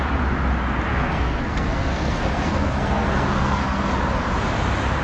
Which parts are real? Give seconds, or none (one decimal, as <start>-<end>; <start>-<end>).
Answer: 0.0-0.9; 3.9-5.0